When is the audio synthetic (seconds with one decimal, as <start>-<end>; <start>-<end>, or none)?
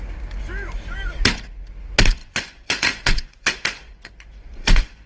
2.2-5.1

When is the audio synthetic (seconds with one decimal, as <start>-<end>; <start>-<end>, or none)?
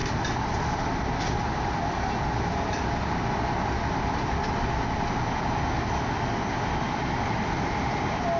none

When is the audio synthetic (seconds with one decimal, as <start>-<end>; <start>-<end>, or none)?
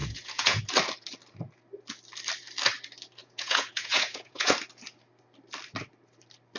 0.0-0.6; 3.2-4.5